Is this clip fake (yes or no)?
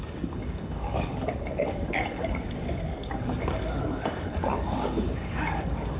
yes